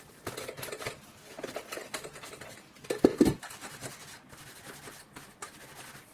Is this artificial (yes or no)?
no